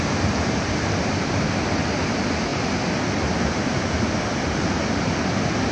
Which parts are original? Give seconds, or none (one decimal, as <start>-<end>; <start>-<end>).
0.0-5.7